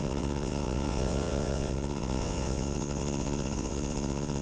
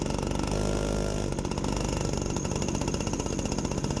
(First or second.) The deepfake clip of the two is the first